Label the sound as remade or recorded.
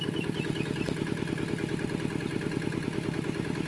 recorded